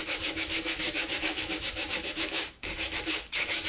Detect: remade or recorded remade